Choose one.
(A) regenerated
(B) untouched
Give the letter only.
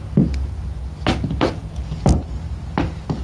B